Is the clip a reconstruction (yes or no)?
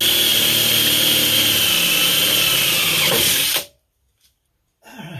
no